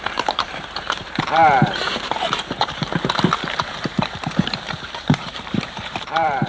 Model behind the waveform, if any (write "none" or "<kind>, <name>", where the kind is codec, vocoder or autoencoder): vocoder, BigVGAN v2